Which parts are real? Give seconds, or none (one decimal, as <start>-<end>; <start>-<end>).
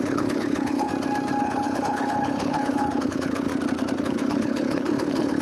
0.9-1.4; 3.5-4.0